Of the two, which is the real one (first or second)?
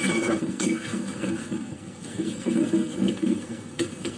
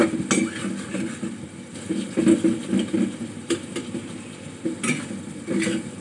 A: second